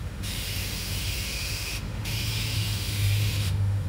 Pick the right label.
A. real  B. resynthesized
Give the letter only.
B